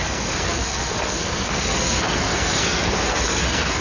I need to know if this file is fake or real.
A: fake